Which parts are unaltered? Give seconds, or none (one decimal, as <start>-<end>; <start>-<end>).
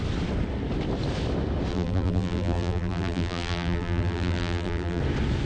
0.0-1.7; 5.0-5.5